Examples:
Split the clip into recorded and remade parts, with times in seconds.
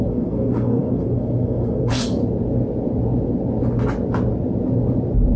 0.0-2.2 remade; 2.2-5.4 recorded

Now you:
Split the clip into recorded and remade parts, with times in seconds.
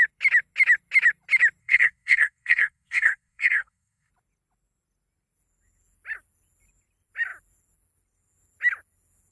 0.0-1.6 recorded; 1.6-4.1 remade; 4.1-9.3 recorded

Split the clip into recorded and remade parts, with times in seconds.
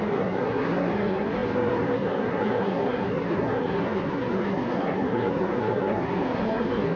0.0-7.0 remade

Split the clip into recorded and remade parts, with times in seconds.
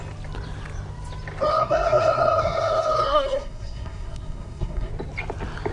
0.0-1.5 recorded; 1.5-4.9 remade; 4.9-5.7 recorded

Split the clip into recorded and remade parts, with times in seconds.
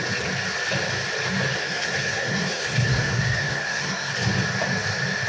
0.0-1.6 recorded; 1.6-4.1 remade; 4.1-5.3 recorded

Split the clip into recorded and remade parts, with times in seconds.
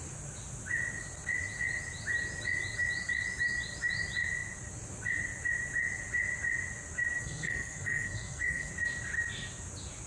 0.0-7.2 recorded; 7.2-8.7 remade; 8.7-10.1 recorded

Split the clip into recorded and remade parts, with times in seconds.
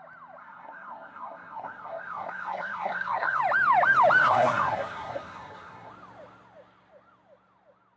0.0-0.4 recorded; 0.4-3.4 remade; 3.4-4.2 recorded; 4.2-5.9 remade; 5.9-8.0 recorded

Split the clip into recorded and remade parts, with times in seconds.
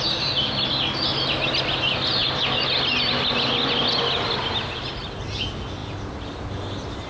0.0-7.1 recorded